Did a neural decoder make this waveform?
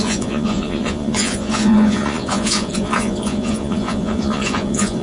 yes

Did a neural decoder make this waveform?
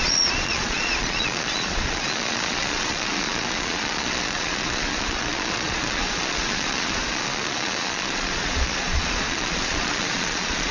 yes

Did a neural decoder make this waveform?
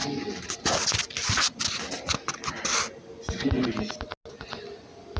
no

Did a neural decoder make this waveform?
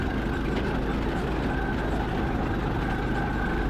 no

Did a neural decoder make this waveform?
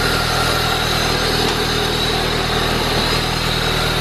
no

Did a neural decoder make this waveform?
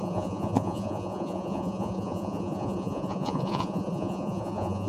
yes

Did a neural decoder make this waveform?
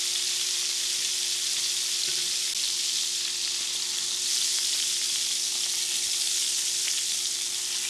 no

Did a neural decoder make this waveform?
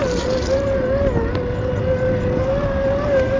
no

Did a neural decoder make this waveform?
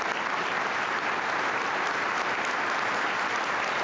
yes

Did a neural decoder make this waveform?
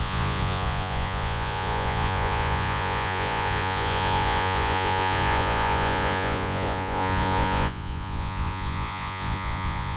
yes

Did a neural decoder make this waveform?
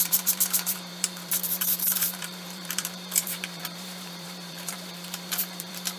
yes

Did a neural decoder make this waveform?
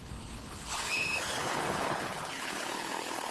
yes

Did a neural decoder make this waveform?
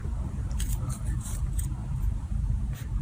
yes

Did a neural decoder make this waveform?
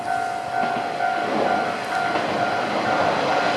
no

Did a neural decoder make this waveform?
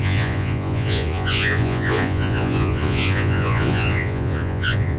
yes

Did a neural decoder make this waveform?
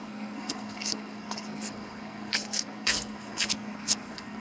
yes